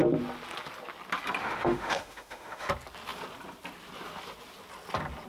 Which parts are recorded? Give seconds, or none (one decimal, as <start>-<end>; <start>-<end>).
0.0-1.4; 2.7-5.3